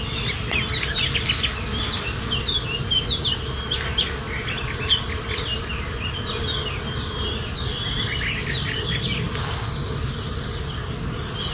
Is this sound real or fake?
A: real